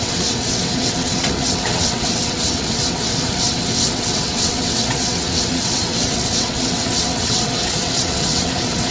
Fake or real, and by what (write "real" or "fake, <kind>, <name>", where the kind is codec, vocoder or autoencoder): fake, vocoder, WaveNeXt